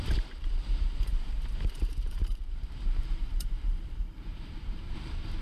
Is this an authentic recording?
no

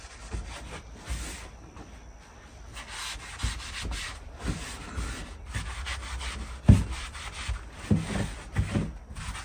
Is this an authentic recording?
yes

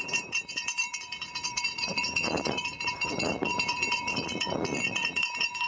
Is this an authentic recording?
no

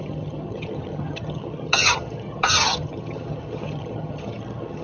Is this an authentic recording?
no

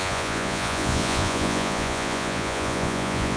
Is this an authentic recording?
no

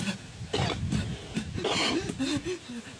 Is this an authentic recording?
yes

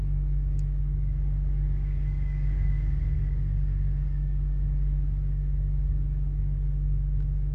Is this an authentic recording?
no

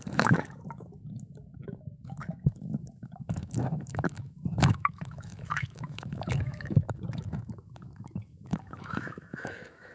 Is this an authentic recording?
no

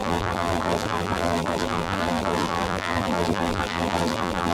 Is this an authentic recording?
no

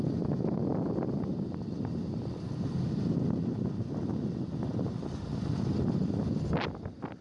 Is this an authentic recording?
yes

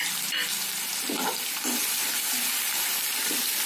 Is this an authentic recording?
no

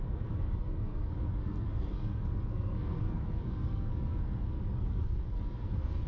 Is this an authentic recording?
no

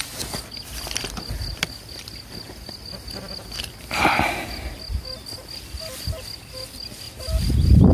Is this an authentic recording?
yes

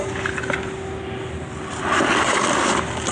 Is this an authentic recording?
yes